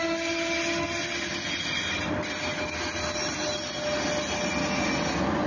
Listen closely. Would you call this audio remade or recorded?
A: recorded